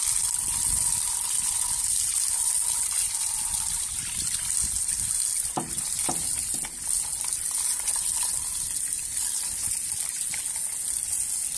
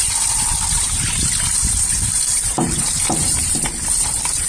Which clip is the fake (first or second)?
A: second